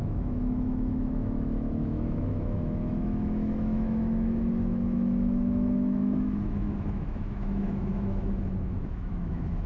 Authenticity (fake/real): fake